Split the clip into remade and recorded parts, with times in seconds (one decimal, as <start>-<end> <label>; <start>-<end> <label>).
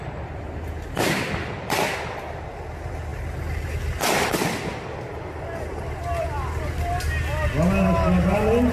0.0-8.7 recorded